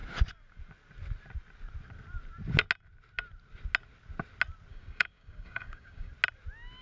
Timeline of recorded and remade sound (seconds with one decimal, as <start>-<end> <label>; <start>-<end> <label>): 0.0-4.7 recorded; 4.7-6.1 remade; 6.1-6.8 recorded